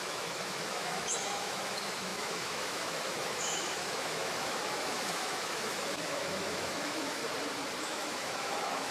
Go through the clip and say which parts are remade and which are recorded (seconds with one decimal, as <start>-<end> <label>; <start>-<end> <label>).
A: 0.0-7.2 remade; 7.2-7.8 recorded; 7.8-8.9 remade